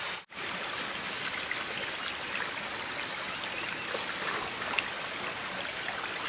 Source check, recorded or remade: recorded